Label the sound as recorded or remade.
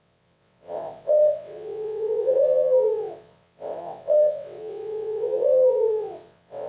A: remade